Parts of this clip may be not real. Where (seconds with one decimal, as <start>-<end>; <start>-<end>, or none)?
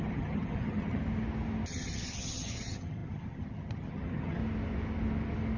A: 0.0-1.0; 1.7-4.4